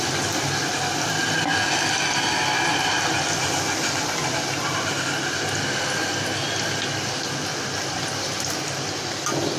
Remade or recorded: recorded